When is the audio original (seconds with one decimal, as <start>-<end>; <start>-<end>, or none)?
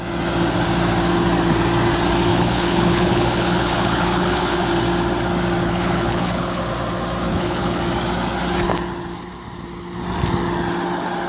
0.0-2.3; 4.7-5.6; 6.6-7.3; 7.8-11.3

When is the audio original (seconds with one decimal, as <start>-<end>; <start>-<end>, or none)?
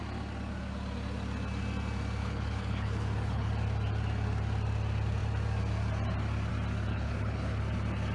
0.0-2.2; 3.5-6.9; 7.6-8.1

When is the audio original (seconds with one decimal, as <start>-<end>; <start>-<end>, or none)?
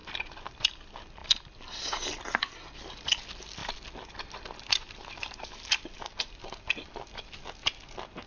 0.0-8.3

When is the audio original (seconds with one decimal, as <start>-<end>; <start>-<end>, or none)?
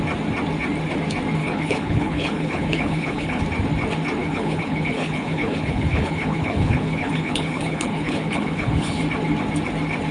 0.0-1.4; 3.4-4.2; 9.0-10.1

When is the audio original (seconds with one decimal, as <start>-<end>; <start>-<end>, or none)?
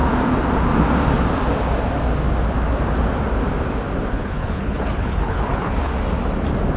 0.0-4.1; 5.9-6.8